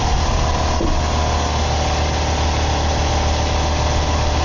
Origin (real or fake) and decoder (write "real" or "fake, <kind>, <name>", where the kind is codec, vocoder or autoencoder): real